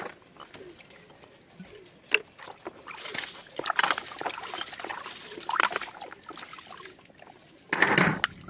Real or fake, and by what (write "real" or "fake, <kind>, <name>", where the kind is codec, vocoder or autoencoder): real